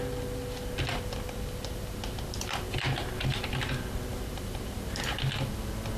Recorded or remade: remade